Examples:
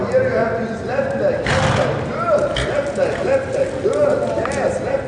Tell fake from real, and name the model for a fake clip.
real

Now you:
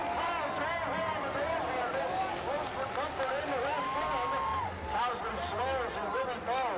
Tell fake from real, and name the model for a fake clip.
real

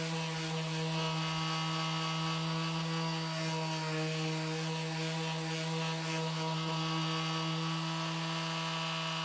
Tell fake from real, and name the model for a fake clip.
real